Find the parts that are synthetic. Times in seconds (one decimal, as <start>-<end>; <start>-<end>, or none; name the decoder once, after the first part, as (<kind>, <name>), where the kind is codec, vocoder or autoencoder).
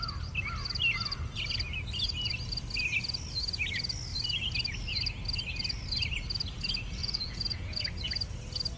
7.0-7.8 (vocoder, Vocos)